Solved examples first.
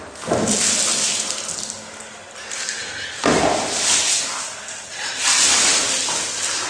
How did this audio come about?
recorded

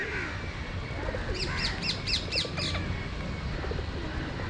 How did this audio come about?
recorded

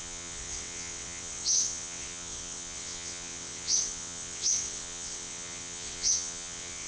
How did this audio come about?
remade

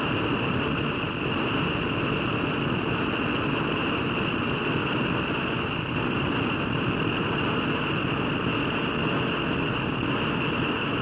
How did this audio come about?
recorded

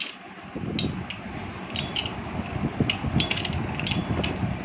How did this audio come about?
recorded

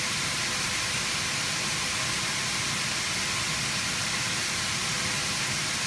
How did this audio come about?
recorded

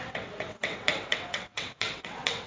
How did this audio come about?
remade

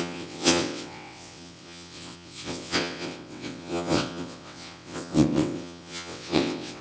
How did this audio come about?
remade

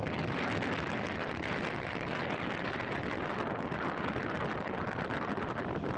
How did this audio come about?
recorded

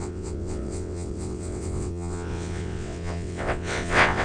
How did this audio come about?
remade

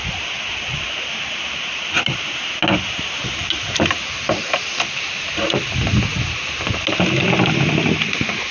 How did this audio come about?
recorded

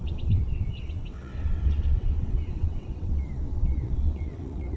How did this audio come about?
remade